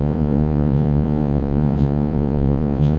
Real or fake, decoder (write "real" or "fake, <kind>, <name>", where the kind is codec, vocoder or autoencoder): fake, vocoder, Vocos